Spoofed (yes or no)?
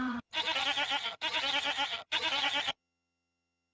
yes